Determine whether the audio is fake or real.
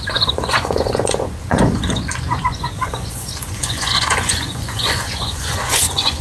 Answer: fake